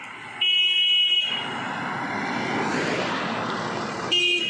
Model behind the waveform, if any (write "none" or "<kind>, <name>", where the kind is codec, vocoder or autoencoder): none